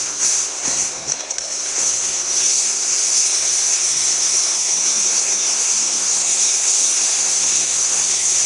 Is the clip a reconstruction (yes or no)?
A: yes